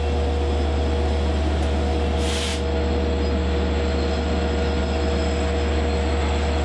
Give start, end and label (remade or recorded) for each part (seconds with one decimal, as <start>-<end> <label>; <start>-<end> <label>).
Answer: 0.0-6.6 recorded